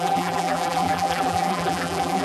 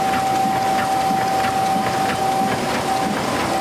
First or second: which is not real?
first